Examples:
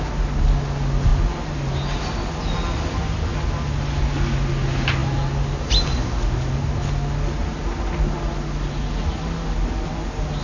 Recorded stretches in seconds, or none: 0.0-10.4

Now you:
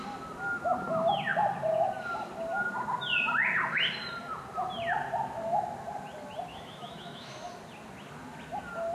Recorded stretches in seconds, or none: 0.0-6.5; 7.5-8.9

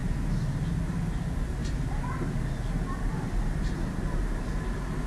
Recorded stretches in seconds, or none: 0.0-5.1

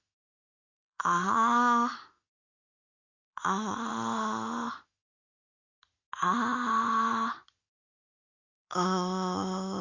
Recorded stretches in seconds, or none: 5.1-7.6